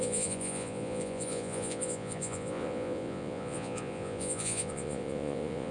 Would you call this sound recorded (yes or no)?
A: no